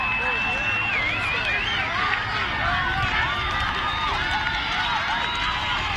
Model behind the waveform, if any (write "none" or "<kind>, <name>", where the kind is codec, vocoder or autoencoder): none